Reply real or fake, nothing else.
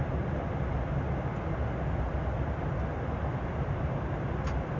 real